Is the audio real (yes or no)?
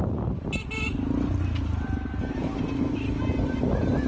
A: yes